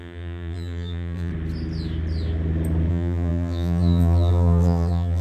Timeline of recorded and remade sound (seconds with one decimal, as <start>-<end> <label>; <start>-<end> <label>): 0.0-1.3 remade; 1.3-2.9 recorded; 2.9-5.2 remade